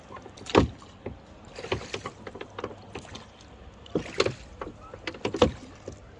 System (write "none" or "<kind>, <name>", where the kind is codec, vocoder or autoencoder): none